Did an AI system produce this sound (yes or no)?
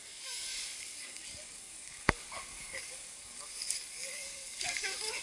yes